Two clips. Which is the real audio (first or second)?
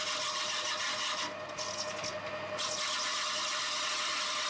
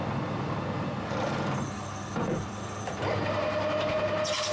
first